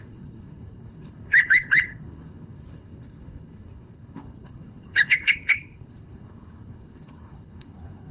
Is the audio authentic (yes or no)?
no